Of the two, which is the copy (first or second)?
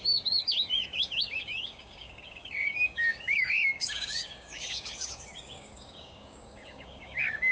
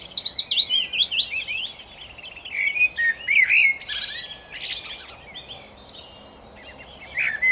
first